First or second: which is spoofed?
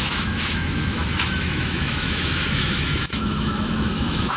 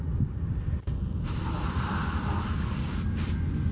first